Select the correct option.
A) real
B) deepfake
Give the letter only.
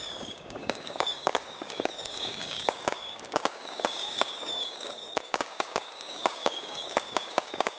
B